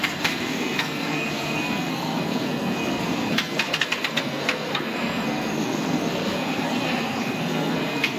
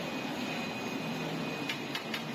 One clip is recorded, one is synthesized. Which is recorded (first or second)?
second